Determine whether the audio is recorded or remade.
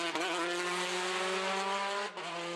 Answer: recorded